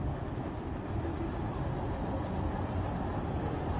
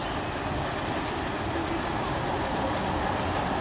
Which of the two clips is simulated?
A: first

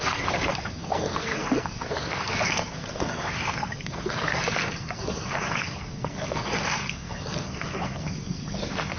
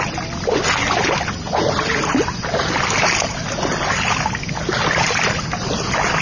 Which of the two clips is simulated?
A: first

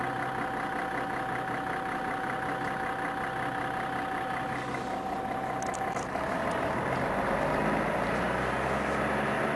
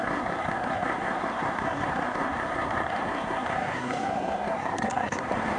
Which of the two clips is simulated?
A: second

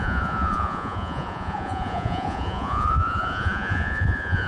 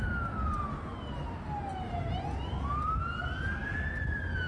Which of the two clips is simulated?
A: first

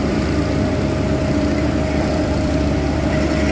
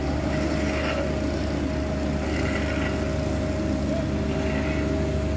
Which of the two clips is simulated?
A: first